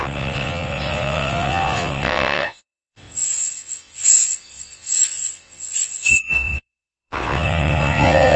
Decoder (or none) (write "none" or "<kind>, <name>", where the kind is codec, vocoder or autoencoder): vocoder, WaveNeXt